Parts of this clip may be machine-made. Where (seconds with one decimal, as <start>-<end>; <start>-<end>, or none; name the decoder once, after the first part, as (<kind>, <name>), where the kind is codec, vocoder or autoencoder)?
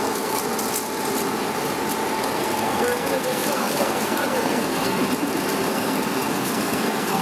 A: 0.0-0.4 (codec, SNAC); 2.1-5.0; 5.7-7.2